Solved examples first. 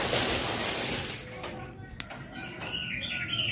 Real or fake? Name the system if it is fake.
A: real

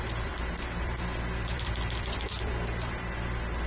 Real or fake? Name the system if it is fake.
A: fake, vocoder, BigVGAN v2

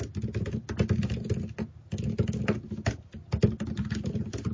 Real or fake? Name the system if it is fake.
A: real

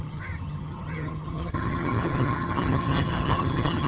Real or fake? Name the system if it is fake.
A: fake, vocoder, HiFi-GAN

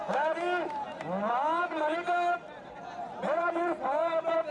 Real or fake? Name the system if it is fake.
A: real